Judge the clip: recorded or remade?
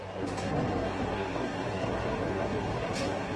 remade